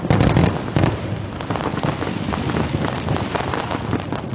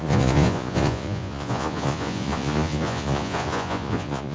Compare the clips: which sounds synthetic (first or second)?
second